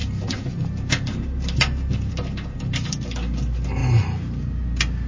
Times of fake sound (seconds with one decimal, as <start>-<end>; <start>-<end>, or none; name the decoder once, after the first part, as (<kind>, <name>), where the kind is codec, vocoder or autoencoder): 0.0-2.1 (vocoder, BigVGAN v2)